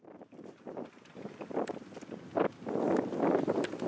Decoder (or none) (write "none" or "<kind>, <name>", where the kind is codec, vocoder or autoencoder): none